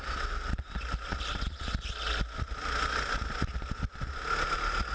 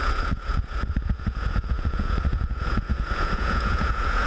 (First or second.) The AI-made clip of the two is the second